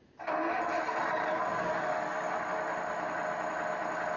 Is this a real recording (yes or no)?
yes